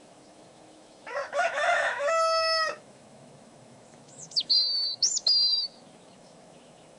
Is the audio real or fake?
fake